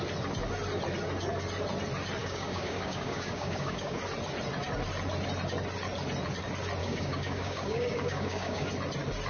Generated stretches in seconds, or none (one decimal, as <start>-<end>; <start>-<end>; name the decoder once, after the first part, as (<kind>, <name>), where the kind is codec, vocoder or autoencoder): 2.2-4.0 (codec, DAC); 6.8-8.7